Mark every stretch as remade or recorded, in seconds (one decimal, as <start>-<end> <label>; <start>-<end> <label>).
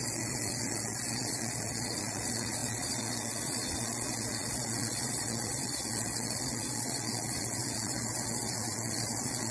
0.0-9.5 remade